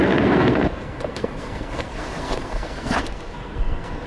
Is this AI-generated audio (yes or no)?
yes